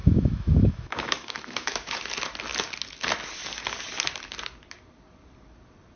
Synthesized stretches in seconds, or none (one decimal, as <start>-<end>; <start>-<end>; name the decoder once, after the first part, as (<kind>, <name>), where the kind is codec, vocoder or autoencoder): 0.0-2.0 (autoencoder, DAC-VAE)